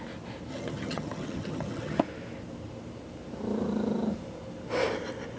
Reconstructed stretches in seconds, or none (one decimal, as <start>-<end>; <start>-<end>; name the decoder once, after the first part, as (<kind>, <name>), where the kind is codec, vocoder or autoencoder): 0.5-2.0 (vocoder, HiFi-GAN)